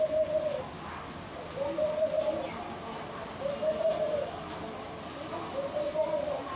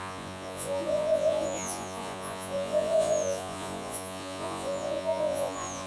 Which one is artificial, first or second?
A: second